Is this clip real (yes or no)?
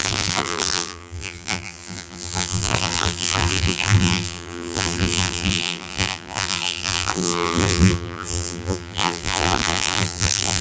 no